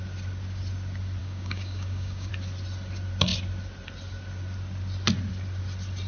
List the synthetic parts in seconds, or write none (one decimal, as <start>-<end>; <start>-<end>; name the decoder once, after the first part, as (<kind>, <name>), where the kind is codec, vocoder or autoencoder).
1.2-2.3 (codec, DAC)